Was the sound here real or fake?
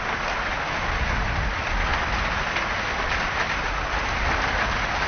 real